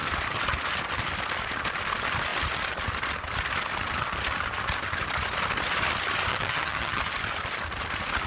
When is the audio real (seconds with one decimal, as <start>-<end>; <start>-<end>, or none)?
0.0-6.3; 7.0-8.3

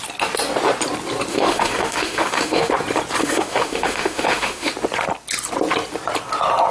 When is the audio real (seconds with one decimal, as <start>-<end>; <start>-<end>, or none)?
0.0-1.3; 2.7-3.2; 4.7-6.7

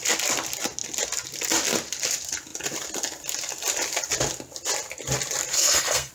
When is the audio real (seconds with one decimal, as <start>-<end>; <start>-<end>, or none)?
0.0-5.5

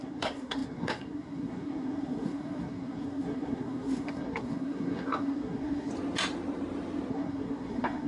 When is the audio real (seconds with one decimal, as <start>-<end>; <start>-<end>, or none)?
5.9-7.1

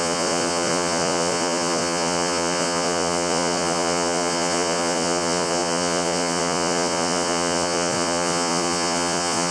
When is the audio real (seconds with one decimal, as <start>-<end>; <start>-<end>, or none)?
none